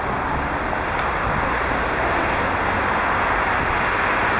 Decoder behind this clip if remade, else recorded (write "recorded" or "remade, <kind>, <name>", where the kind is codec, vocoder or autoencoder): recorded